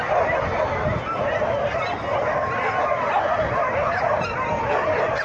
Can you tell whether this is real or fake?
real